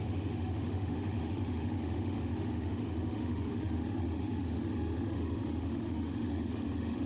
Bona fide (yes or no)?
no